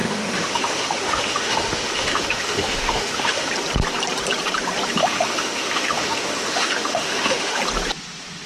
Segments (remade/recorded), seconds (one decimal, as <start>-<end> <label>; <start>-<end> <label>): 0.0-3.5 remade; 3.5-5.0 recorded; 5.0-7.6 remade; 7.6-8.5 recorded